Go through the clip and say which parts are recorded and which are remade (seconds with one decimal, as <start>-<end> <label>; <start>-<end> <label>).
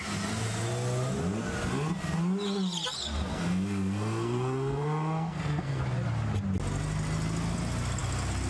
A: 0.0-3.3 recorded; 3.3-5.8 remade; 5.8-8.5 recorded